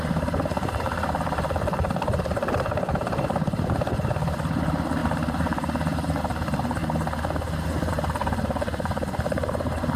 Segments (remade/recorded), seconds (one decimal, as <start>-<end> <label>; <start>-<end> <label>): 0.0-6.8 remade; 6.8-7.9 recorded; 7.9-10.0 remade